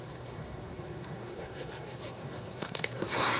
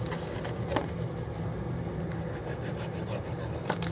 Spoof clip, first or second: first